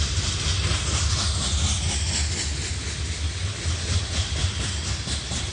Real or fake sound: real